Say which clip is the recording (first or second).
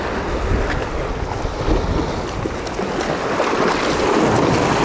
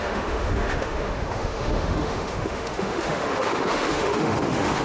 first